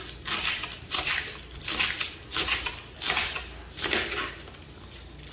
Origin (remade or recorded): recorded